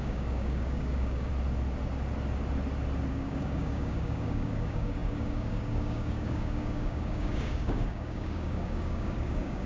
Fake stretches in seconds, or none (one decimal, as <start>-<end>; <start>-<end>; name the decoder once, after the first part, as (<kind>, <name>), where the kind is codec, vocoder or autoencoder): 0.0-1.3 (codec, DAC); 3.1-9.7